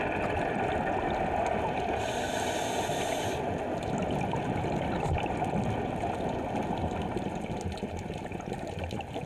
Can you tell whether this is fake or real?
real